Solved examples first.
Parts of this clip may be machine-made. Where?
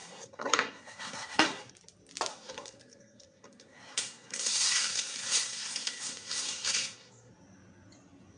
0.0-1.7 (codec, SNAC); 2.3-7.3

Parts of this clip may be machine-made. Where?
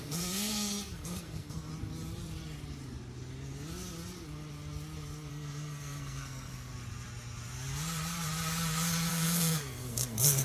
0.0-1.7 (codec, SNAC); 5.3-6.7; 9.1-10.4